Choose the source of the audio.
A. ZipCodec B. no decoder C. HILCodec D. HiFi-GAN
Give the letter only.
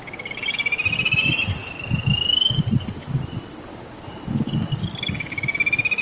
B